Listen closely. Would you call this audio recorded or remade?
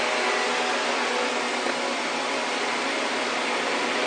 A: recorded